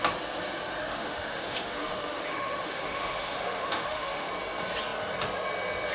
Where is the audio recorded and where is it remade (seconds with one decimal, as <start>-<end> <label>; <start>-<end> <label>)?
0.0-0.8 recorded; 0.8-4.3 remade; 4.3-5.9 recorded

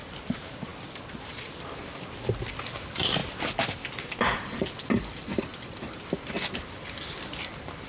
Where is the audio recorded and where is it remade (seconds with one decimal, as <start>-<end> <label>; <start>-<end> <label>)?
0.0-0.7 remade; 0.7-2.5 recorded; 2.5-7.9 remade

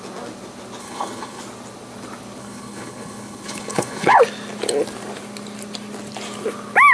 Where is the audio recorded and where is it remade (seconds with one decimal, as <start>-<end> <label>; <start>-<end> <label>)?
0.0-0.8 recorded; 0.8-1.4 remade; 1.4-2.4 recorded; 2.4-4.2 remade; 4.2-6.9 recorded

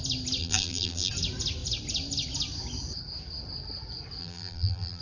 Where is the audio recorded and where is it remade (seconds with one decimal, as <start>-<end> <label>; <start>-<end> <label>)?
0.0-0.4 recorded; 0.4-1.1 remade; 1.1-4.2 recorded; 4.2-5.0 remade